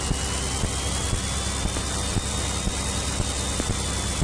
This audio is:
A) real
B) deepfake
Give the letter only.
A